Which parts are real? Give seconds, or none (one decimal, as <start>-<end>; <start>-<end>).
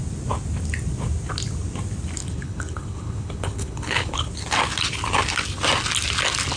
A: 0.0-2.2; 4.3-6.6